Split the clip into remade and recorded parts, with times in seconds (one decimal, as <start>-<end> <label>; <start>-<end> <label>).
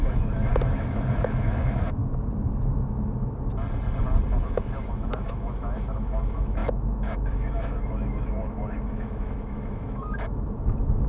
0.0-2.0 remade; 2.0-4.4 recorded; 4.4-11.1 remade